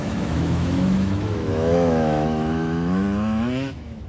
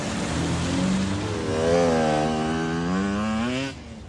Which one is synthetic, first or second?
first